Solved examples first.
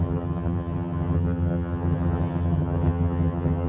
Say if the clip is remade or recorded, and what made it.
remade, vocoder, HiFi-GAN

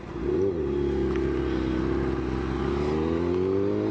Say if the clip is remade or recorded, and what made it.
recorded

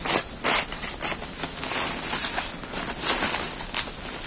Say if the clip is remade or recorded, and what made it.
recorded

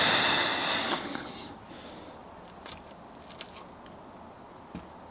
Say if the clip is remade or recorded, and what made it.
recorded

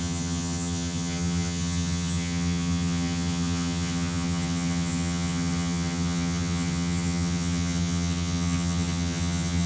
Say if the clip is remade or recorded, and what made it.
remade, vocoder, HiFi-GAN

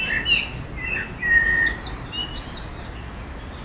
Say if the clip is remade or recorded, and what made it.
recorded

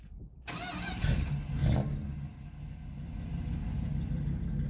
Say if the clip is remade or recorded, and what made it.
recorded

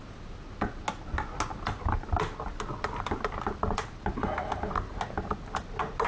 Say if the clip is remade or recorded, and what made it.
recorded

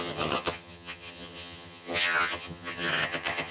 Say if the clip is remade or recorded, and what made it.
remade, vocoder, HiFi-GAN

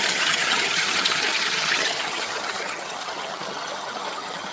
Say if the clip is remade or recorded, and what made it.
remade, vocoder, HiFi-GAN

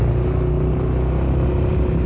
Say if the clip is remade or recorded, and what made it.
recorded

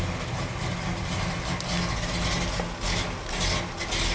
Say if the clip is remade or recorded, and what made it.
recorded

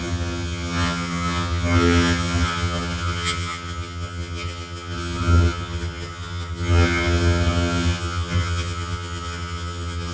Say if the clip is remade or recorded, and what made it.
remade, vocoder, HiFi-GAN